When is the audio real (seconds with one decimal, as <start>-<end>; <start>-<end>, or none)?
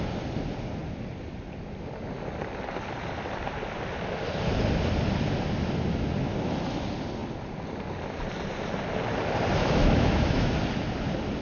0.0-9.6; 10.5-11.4